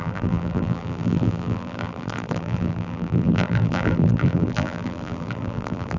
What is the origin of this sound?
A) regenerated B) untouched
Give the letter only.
A